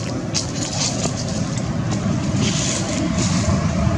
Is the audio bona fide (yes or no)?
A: yes